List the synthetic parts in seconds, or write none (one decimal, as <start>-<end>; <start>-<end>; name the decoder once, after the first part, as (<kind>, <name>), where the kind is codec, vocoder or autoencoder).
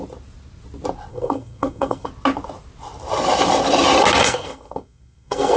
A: 1.1-2.1 (codec, SNAC); 4.2-5.6